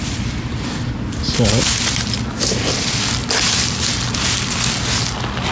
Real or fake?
real